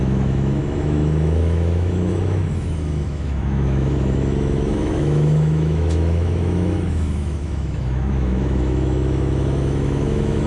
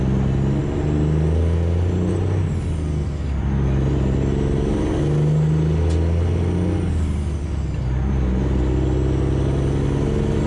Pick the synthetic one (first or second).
first